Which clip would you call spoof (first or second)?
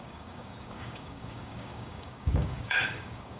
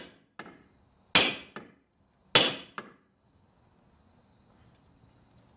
first